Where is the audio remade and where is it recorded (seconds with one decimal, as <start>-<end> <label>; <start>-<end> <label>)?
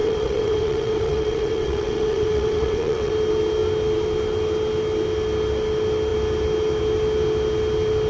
0.0-3.1 remade; 3.1-8.1 recorded